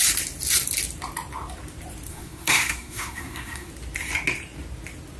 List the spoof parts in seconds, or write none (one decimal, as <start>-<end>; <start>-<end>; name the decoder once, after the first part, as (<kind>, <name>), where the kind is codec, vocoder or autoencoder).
2.1-3.7 (codec, SNAC)